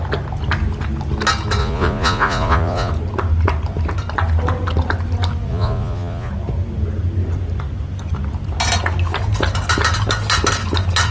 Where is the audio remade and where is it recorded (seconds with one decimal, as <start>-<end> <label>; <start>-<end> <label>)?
0.0-1.6 recorded; 1.6-2.9 remade; 2.9-5.5 recorded; 5.5-6.3 remade; 6.3-11.1 recorded